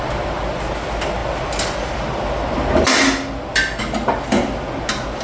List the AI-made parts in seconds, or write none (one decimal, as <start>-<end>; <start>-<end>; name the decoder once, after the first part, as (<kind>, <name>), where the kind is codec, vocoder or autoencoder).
none